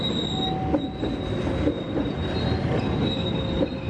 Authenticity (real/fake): real